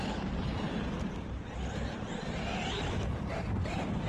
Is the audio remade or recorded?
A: recorded